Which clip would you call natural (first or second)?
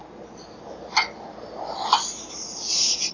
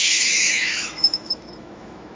first